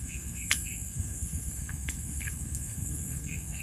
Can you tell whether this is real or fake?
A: fake